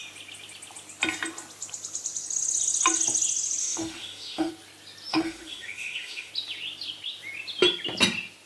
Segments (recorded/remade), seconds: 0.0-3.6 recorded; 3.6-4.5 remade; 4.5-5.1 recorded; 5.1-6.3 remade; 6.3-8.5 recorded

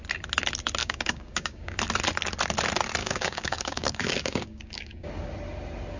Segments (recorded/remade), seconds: 0.0-0.8 recorded; 0.8-1.8 remade; 1.8-3.0 recorded; 3.0-5.1 remade; 5.1-6.0 recorded

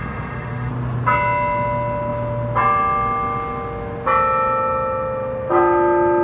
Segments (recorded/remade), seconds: 0.0-0.7 remade; 0.7-6.2 recorded